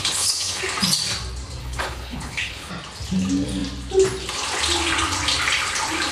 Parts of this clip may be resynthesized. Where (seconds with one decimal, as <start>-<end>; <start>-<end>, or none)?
0.0-0.6; 1.6-2.7